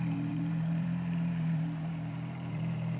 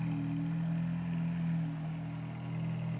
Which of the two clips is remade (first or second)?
first